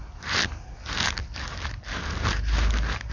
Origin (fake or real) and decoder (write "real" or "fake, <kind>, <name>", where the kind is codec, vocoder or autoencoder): real